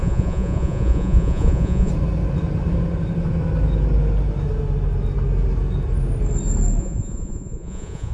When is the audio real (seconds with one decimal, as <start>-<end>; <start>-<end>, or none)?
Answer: 1.9-6.8